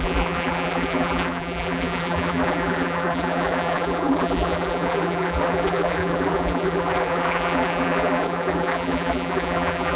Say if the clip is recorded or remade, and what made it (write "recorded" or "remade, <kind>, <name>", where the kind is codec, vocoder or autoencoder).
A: remade, vocoder, BigVGAN v2